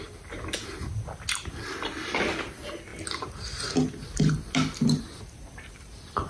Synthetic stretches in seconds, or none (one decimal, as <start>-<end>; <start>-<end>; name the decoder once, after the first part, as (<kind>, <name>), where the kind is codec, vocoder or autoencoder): none